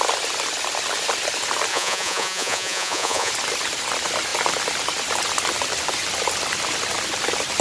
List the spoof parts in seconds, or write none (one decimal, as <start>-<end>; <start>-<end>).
1.7-3.3